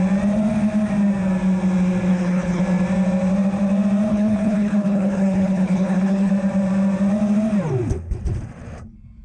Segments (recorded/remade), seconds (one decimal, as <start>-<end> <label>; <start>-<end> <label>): 0.0-2.1 recorded; 2.1-2.6 remade; 2.6-4.1 recorded; 4.1-6.3 remade; 6.3-9.2 recorded